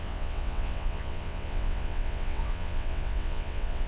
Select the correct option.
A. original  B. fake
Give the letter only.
B